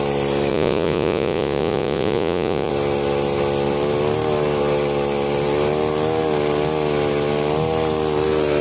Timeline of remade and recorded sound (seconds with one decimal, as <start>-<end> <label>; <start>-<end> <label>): 0.0-0.5 recorded; 0.5-2.7 remade; 2.7-8.6 recorded